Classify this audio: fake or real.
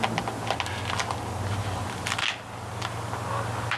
real